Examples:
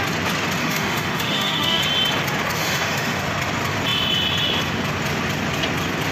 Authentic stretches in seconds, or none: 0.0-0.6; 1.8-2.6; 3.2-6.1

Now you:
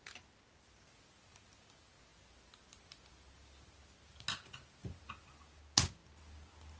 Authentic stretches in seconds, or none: 0.0-6.8